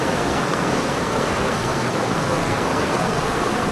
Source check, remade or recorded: remade